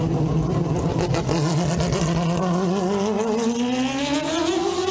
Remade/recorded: recorded